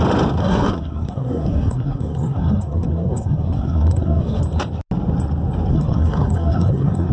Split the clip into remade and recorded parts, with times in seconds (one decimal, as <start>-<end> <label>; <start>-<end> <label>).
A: 0.0-0.4 recorded; 0.4-4.4 remade; 4.4-5.7 recorded; 5.7-7.1 remade